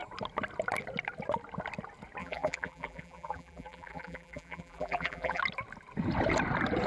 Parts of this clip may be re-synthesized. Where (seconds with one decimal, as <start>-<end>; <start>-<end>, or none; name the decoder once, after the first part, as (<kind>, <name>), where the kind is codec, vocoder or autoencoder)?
2.2-5.4 (vocoder, BigVGAN v2)